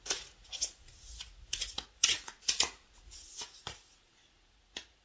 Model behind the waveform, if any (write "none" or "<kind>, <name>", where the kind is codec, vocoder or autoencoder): vocoder, Vocos